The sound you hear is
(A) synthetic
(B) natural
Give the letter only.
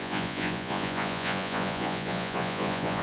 A